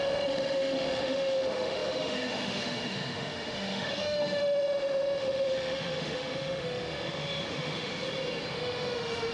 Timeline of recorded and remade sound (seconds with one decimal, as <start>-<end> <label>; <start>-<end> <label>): 0.0-7.9 remade; 7.9-8.5 recorded; 8.5-9.3 remade